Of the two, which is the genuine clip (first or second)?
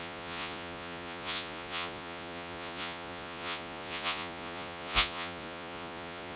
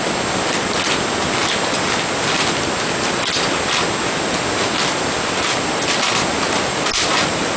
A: second